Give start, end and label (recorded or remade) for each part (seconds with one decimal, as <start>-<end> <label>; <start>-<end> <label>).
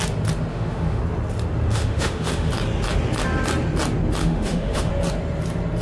0.0-0.5 recorded; 0.5-1.0 remade; 1.0-1.7 recorded; 1.7-2.5 remade; 2.5-4.2 recorded; 4.2-4.9 remade; 4.9-5.8 recorded